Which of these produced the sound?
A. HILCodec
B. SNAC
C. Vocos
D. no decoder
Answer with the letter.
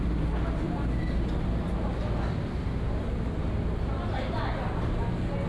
D